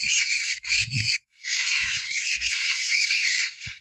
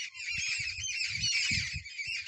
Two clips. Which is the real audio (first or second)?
second